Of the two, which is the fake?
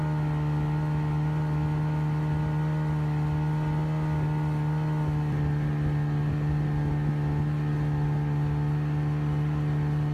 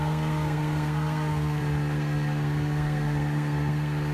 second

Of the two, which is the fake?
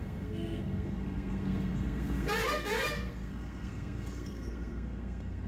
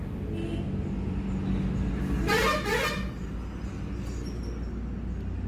first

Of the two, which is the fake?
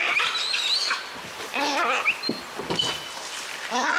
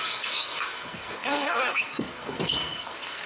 second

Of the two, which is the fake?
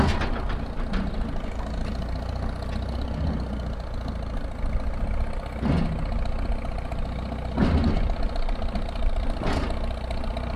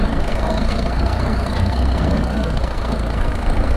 second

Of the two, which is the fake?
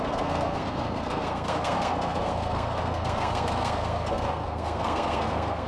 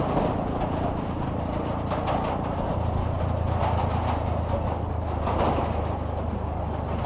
first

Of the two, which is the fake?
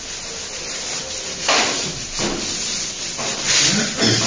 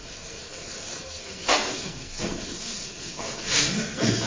second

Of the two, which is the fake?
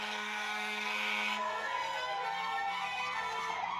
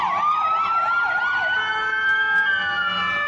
first